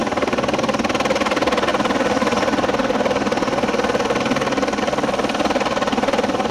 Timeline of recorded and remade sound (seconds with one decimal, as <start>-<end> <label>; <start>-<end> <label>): 0.0-6.5 recorded

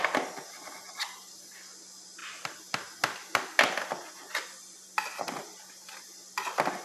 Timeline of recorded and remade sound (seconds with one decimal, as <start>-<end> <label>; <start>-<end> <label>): 0.0-6.8 recorded